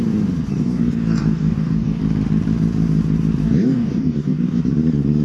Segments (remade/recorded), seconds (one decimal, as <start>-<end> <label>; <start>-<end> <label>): 0.0-0.5 recorded; 0.5-2.0 remade; 2.0-3.4 recorded; 3.4-4.6 remade; 4.6-5.2 recorded

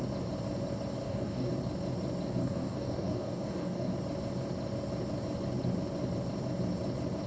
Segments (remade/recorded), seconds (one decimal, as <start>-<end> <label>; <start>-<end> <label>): 0.0-1.0 recorded; 1.0-1.5 remade; 1.5-2.4 recorded; 2.4-3.9 remade; 3.9-7.3 recorded

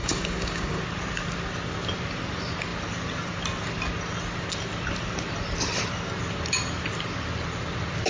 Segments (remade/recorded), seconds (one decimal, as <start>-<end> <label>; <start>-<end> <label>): 0.0-0.8 remade; 0.8-8.1 recorded

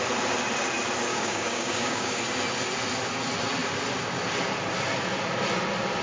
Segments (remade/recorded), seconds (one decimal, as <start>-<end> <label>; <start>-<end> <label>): 0.0-1.1 recorded; 1.1-2.2 remade; 2.2-6.0 recorded

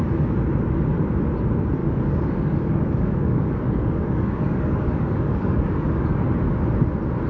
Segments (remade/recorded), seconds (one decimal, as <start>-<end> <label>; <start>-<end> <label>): 0.0-1.8 recorded; 1.8-6.2 remade; 6.2-7.3 recorded

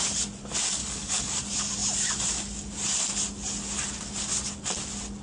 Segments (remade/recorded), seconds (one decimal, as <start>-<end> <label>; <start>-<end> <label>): 0.0-0.8 recorded; 0.8-1.4 remade; 1.4-5.2 recorded

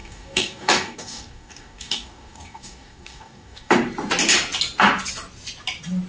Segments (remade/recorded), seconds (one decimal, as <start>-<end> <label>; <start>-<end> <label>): 0.0-3.7 remade; 3.7-6.1 recorded